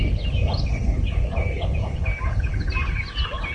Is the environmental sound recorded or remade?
recorded